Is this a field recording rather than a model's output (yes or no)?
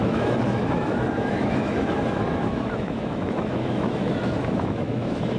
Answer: no